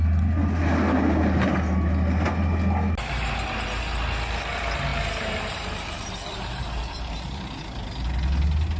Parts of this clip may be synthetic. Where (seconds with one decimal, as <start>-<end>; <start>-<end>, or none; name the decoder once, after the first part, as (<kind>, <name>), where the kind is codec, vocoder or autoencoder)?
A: 4.9-7.4 (vocoder, BigVGAN v2)